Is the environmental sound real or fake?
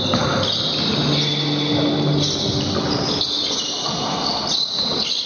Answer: real